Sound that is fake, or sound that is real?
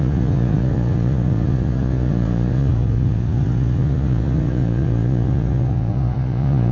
fake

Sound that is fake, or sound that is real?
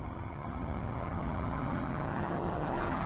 fake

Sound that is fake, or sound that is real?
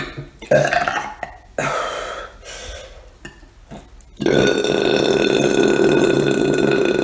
real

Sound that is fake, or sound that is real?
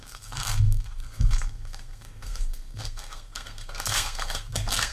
fake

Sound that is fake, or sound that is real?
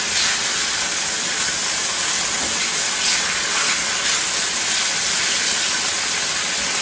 real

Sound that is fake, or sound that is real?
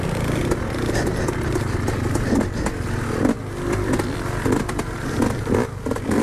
real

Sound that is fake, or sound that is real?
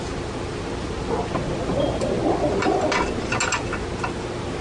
real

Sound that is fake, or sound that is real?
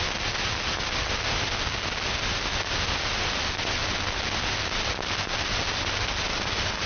real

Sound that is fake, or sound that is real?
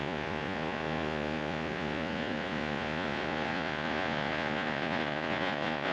fake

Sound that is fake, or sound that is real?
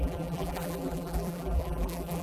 fake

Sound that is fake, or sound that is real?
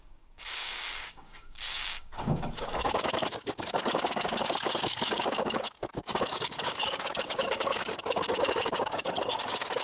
fake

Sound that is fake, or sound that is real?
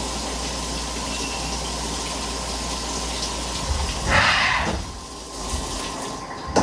real